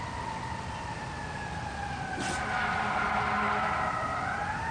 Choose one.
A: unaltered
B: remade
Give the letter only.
A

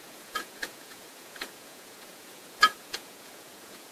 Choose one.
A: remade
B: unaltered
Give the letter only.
A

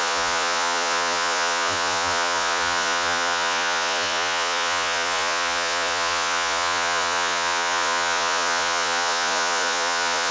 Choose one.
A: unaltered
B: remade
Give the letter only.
B